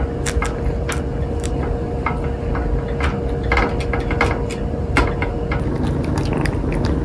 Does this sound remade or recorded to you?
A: recorded